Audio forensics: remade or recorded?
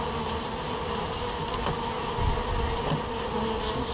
recorded